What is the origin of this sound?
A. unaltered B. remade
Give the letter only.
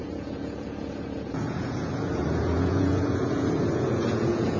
B